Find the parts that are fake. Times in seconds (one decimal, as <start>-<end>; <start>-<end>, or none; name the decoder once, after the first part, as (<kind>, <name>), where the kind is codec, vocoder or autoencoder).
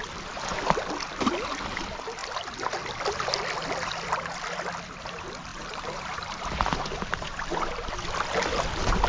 5.5-7.7 (vocoder, BigVGAN v2)